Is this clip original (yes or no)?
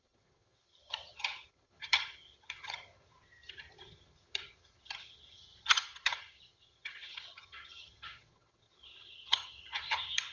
no